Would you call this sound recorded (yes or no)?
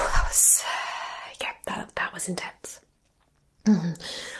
yes